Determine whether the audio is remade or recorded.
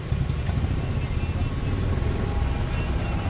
recorded